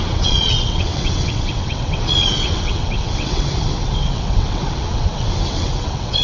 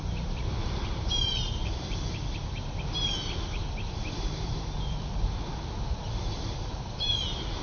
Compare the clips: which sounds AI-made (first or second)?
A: first